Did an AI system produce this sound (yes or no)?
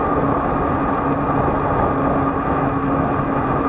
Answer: no